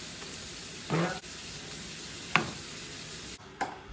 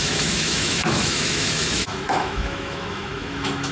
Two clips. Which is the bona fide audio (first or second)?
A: first